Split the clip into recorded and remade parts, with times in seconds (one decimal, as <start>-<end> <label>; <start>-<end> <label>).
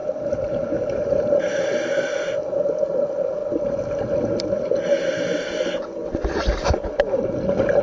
0.0-1.4 remade; 1.4-7.8 recorded